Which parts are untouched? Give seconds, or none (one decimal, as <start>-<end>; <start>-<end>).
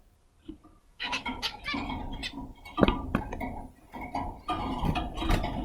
0.0-0.8; 1.6-5.6